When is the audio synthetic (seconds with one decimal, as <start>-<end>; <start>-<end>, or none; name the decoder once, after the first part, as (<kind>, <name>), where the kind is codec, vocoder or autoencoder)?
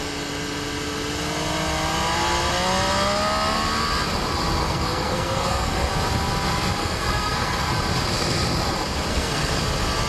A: 4.6-5.9 (codec, SNAC); 6.8-7.7; 9.1-9.6